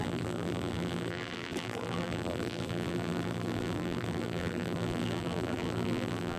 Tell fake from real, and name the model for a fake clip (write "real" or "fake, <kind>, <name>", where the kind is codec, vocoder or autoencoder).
fake, vocoder, BigVGAN v2